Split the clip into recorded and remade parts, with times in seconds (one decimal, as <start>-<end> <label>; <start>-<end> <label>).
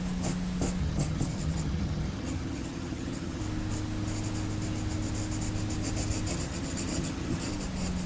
0.0-0.8 recorded; 0.8-3.4 remade; 3.4-6.3 recorded; 6.3-7.5 remade; 7.5-8.1 recorded